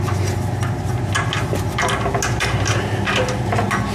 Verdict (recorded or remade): recorded